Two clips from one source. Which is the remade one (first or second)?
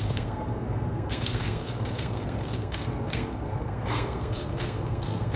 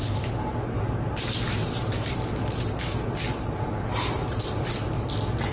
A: first